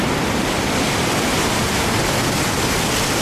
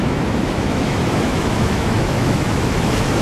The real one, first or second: first